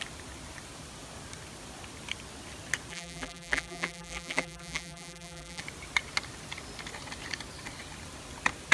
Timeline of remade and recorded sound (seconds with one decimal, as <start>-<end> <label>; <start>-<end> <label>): 0.0-2.9 recorded; 2.9-5.6 remade; 5.6-8.7 recorded